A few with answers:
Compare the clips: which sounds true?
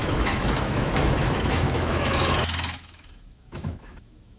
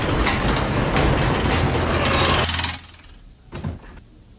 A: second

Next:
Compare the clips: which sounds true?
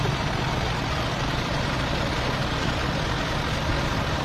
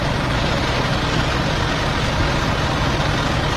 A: second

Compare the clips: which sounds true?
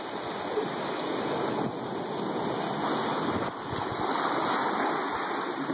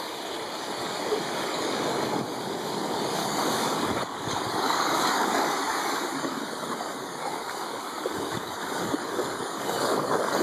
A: first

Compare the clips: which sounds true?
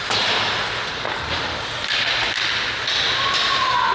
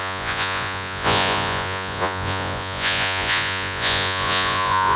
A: first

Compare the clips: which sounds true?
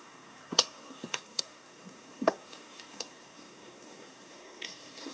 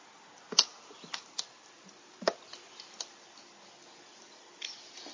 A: second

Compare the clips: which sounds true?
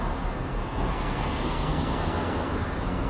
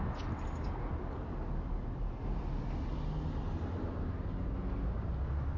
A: second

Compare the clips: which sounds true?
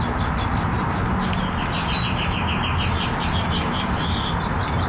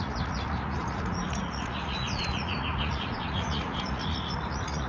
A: first